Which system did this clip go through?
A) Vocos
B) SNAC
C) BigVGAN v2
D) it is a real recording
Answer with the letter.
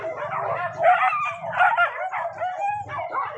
D